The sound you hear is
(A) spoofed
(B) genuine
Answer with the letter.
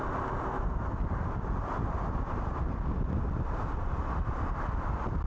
B